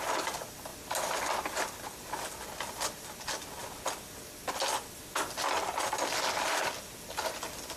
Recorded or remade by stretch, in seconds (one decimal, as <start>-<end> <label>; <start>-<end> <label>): 0.0-7.8 recorded